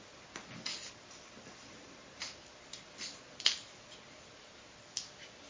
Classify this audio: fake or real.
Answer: real